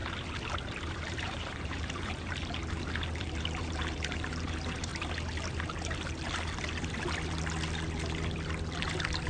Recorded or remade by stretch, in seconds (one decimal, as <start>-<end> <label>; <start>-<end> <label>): 0.0-0.8 recorded; 0.8-4.9 remade; 4.9-9.3 recorded